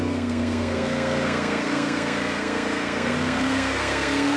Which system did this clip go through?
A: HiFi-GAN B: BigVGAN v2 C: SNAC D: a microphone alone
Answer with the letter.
C